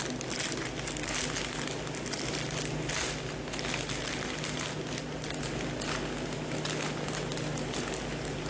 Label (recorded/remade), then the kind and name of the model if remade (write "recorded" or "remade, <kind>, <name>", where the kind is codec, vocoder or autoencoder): recorded